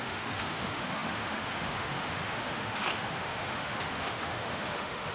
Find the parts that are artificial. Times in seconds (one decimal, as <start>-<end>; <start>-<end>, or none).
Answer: 0.0-5.1